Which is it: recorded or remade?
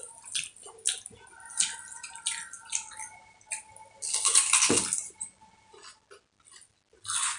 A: recorded